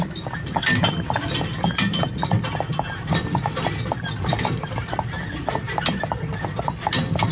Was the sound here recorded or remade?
recorded